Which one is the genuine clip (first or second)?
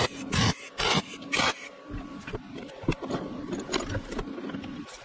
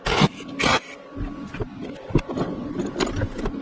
second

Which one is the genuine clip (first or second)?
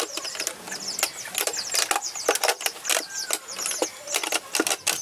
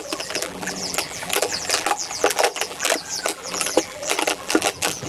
first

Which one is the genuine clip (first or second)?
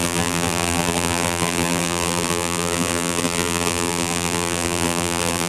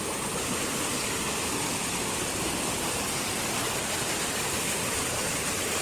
second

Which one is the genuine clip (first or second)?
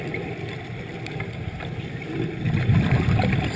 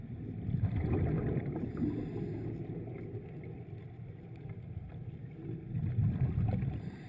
second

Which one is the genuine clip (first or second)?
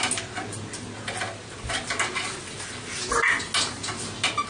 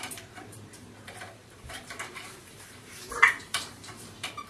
first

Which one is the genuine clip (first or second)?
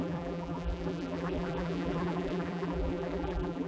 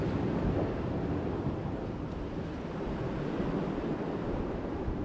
second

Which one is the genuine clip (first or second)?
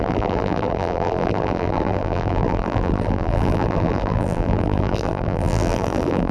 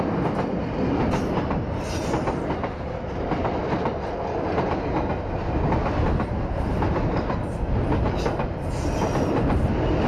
second